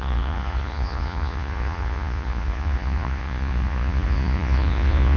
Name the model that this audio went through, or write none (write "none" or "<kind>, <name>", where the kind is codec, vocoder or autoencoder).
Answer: vocoder, Vocos